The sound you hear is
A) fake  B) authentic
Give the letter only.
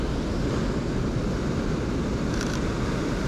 B